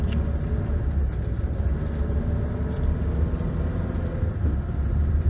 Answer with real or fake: real